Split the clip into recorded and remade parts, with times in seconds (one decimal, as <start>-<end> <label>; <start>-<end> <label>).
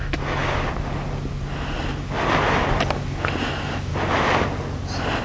0.0-0.4 remade; 0.4-3.5 recorded; 3.5-3.9 remade; 3.9-5.2 recorded